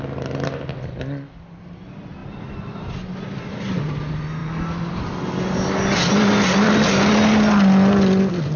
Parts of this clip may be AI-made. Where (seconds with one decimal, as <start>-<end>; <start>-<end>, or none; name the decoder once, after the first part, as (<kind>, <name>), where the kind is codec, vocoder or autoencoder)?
none